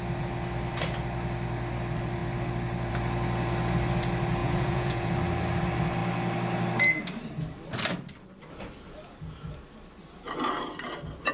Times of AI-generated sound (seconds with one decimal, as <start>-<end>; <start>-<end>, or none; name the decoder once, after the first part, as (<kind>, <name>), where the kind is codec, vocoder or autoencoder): 4.4-5.1 (vocoder, Vocos)